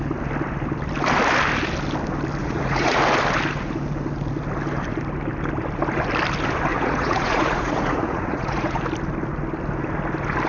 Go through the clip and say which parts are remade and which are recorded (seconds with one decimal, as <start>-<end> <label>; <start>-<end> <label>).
0.0-2.4 recorded; 2.4-3.0 remade; 3.0-6.7 recorded; 6.7-8.8 remade; 8.8-10.5 recorded